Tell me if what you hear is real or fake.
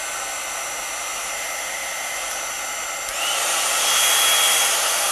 real